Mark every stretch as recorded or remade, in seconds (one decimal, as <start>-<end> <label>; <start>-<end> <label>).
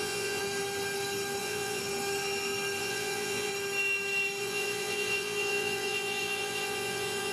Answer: 0.0-0.4 remade; 0.4-1.4 recorded; 1.4-1.8 remade; 1.8-2.8 recorded; 2.8-3.5 remade; 3.5-4.4 recorded; 4.4-7.3 remade